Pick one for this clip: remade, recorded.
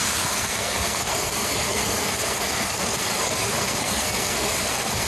remade